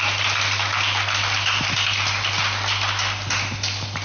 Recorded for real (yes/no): yes